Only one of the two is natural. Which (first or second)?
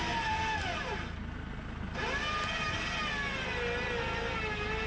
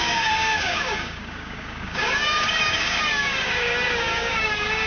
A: first